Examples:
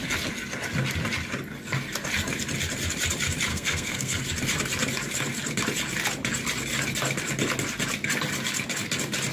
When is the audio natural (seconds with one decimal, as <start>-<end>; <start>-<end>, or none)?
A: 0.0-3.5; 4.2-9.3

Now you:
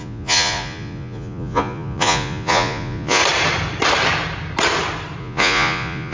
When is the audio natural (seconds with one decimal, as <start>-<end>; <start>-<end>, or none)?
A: 3.2-5.2

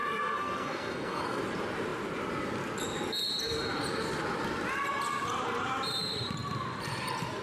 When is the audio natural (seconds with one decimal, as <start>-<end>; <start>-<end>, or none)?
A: 1.4-7.4

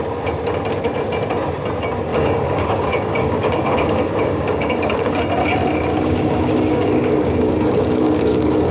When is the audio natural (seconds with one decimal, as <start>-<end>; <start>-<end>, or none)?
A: 0.0-2.1; 5.2-5.9

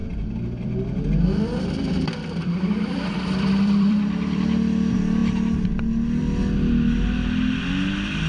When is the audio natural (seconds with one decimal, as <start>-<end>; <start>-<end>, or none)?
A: 4.4-8.3